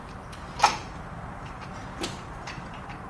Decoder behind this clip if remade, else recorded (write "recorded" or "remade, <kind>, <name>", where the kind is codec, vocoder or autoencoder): remade, vocoder, BigVGAN v2